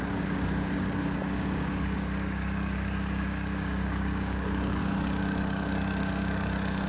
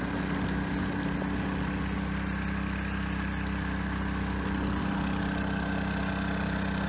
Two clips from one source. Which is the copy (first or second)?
first